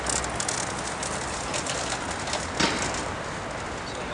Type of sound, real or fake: real